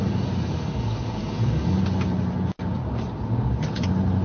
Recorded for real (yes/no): yes